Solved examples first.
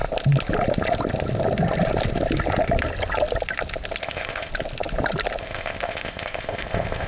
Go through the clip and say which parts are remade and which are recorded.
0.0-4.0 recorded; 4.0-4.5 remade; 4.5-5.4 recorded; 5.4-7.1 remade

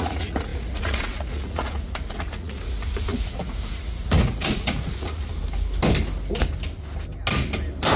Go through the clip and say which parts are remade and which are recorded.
0.0-5.3 remade; 5.3-8.0 recorded

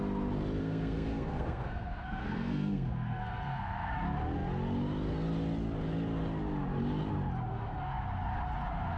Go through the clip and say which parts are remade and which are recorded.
0.0-0.6 recorded; 0.6-3.9 remade; 3.9-7.5 recorded; 7.5-8.0 remade; 8.0-9.0 recorded